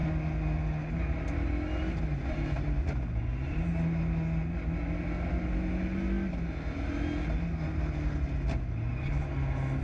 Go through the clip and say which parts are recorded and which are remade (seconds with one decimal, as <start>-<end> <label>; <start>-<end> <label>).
0.0-9.8 recorded